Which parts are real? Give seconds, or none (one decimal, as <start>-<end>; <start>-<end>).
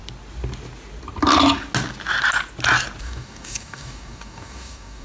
0.0-3.0